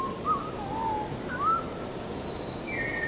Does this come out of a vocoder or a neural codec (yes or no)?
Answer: no